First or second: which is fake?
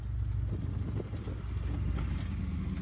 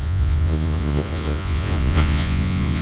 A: second